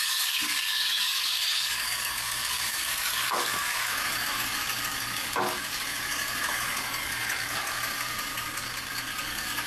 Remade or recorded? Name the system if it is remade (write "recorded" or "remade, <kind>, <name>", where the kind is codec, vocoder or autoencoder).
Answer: remade, codec, DAC